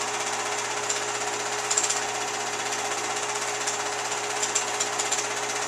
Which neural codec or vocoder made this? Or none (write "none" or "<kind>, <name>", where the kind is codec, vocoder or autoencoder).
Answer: none